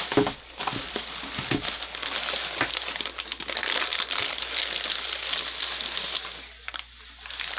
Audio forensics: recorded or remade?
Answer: recorded